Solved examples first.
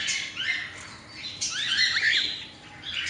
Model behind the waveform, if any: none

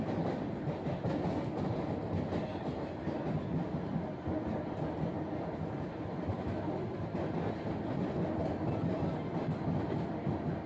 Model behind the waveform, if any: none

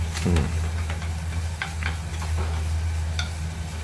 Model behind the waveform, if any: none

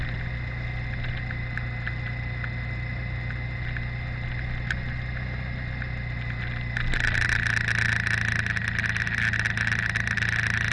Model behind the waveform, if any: none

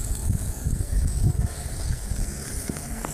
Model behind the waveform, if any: codec, SNAC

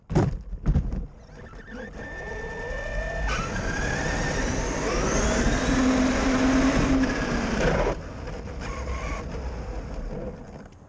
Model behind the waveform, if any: none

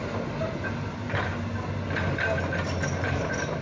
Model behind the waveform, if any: none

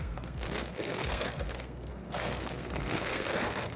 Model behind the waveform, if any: codec, SNAC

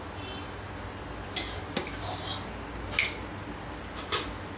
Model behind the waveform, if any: none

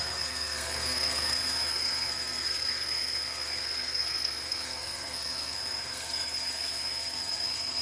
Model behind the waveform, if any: codec, SNAC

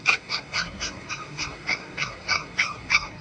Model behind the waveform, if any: codec, SNAC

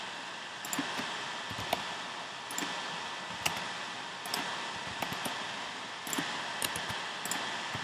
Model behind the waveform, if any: none